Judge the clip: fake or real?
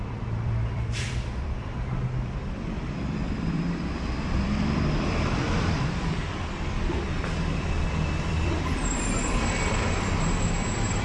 fake